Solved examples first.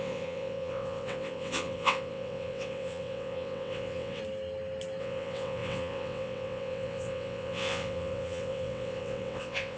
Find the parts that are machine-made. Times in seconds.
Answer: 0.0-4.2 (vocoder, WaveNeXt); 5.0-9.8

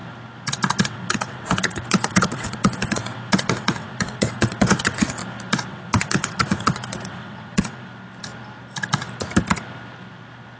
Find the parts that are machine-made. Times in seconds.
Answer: 0.8-5.2 (vocoder, WaveNeXt); 5.7-7.9

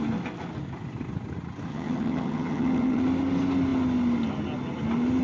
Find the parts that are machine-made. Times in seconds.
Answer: 1.7-3.0 (vocoder, HiFi-GAN)